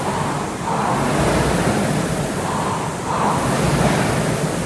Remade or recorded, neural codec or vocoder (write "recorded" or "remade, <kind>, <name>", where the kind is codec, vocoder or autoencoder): recorded